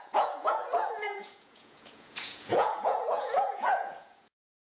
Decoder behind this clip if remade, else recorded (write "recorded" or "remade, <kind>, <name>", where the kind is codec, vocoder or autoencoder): remade, vocoder, Vocos